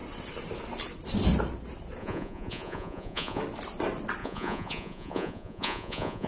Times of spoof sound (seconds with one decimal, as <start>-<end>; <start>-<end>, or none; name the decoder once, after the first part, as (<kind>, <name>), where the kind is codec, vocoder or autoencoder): 2.0-3.4 (vocoder, Vocos); 4.2-6.3